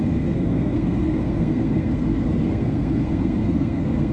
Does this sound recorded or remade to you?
remade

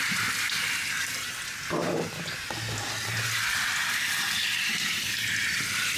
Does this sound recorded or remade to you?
recorded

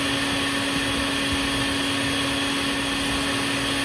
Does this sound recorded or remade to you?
recorded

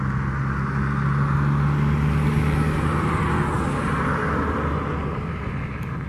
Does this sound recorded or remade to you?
recorded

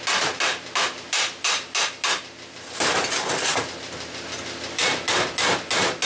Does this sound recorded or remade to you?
recorded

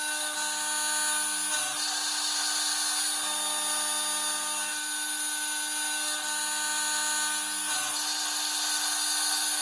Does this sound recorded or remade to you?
recorded